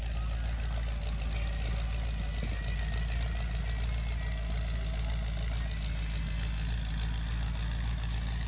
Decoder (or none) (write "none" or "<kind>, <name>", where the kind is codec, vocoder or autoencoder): none